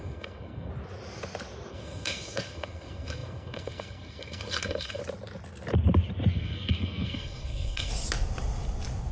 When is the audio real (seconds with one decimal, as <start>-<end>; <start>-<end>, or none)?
0.7-1.7; 5.0-6.3; 7.9-9.1

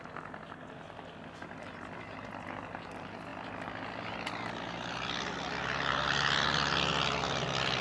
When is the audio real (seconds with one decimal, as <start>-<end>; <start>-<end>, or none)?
0.0-7.8

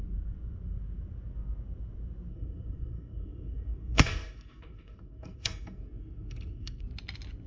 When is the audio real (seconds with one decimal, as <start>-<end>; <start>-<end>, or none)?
0.0-2.3; 6.8-7.5

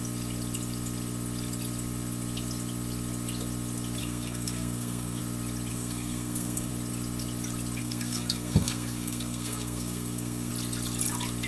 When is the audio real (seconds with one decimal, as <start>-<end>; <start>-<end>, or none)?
0.0-4.0; 5.2-5.7; 6.7-7.8; 10.5-11.5

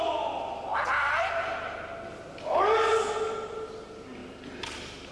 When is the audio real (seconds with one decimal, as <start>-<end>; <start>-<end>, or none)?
0.0-5.1

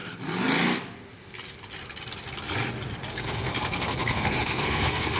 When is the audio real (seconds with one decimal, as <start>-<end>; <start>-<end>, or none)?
0.0-3.1

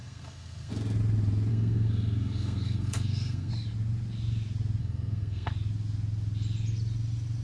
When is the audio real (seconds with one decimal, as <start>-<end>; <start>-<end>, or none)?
0.7-1.5; 3.5-4.8; 5.5-7.4

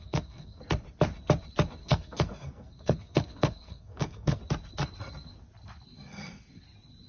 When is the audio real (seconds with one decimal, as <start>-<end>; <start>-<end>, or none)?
0.6-1.8; 4.4-7.1